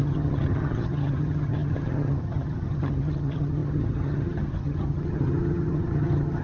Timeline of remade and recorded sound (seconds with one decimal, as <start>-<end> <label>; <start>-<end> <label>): 0.0-6.4 remade